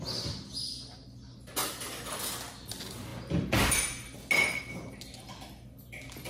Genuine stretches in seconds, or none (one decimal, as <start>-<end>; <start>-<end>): 0.0-6.3